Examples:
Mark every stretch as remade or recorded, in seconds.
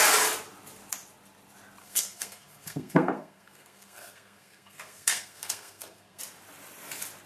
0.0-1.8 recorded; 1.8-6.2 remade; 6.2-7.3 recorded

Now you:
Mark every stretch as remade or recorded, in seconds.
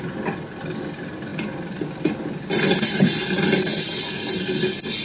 0.0-5.0 recorded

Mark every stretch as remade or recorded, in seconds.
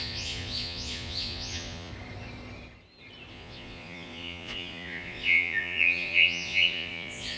0.0-1.9 remade; 1.9-3.3 recorded; 3.3-7.4 remade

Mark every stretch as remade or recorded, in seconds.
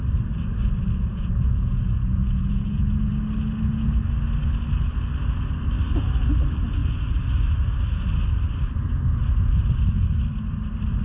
0.0-1.1 recorded; 1.1-3.1 remade; 3.1-11.0 recorded